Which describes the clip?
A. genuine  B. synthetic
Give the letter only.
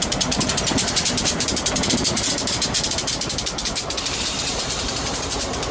B